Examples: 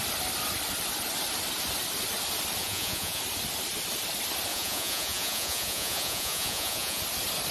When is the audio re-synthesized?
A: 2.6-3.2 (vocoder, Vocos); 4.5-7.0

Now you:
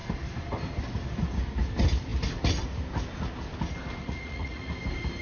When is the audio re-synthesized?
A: 4.0-4.7 (vocoder, Vocos)